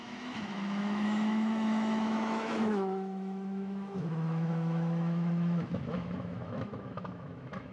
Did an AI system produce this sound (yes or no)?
yes